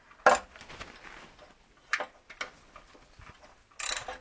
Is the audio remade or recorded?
recorded